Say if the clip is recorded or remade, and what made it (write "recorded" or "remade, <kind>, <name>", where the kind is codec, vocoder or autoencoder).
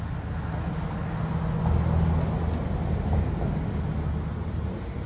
recorded